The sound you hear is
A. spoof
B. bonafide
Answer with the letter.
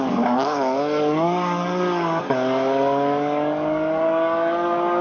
A